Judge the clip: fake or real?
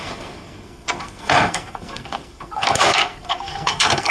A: fake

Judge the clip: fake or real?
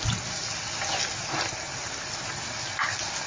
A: real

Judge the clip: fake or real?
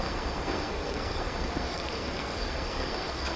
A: fake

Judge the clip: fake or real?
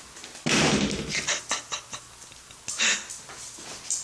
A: real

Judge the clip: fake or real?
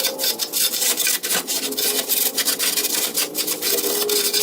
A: real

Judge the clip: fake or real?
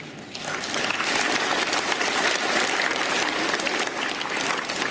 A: real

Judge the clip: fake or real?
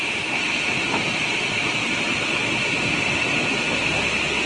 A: real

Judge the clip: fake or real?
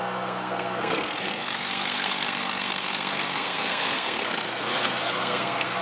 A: fake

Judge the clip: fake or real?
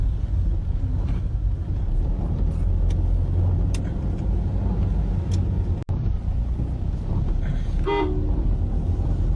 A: real